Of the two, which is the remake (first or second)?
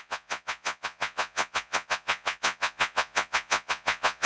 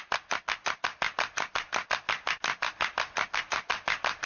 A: first